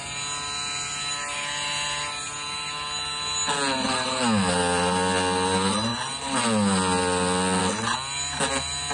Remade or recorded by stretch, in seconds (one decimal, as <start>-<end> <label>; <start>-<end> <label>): 0.0-8.9 recorded

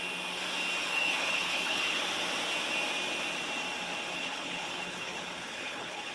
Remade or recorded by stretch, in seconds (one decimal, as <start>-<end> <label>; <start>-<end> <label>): 0.0-0.8 recorded; 0.8-2.0 remade; 2.0-4.1 recorded; 4.1-6.1 remade